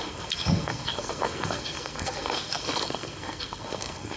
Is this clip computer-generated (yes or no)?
yes